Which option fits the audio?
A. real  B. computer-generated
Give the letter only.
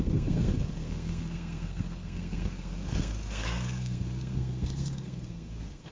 B